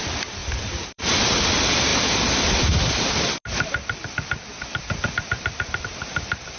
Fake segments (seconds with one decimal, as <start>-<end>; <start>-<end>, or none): 0.4-1.0